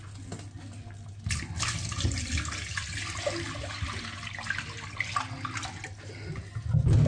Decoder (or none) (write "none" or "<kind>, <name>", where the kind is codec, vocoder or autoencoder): none